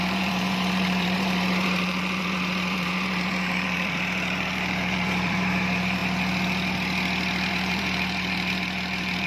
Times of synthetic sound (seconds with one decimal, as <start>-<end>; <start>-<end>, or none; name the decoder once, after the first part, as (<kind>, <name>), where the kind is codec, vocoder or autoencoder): 0.0-6.0 (vocoder, BigVGAN v2); 7.5-9.3

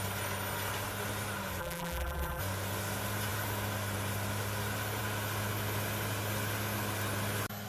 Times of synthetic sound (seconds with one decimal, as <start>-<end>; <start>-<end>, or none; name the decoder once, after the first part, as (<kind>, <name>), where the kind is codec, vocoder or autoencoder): 1.6-2.4 (vocoder, BigVGAN v2)

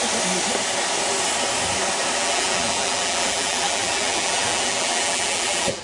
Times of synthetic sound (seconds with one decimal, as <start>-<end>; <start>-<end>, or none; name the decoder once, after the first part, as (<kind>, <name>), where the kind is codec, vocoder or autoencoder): 2.2-5.8 (vocoder, BigVGAN v2)

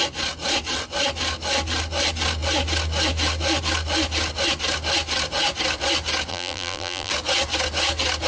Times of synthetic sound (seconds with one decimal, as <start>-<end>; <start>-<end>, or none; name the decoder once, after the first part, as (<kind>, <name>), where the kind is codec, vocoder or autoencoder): 6.3-7.1 (vocoder, BigVGAN v2)

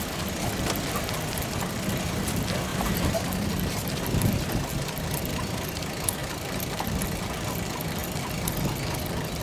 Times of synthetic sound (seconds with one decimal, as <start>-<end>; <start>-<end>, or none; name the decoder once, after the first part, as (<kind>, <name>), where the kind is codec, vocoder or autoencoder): 2.7-4.6 (vocoder, BigVGAN v2); 6.2-7.0

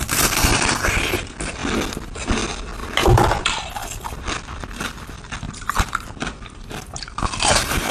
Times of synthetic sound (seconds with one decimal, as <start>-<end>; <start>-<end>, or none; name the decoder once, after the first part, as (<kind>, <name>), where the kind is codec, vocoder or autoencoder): 0.0-1.6 (vocoder, BigVGAN v2); 2.3-2.8; 3.4-7.9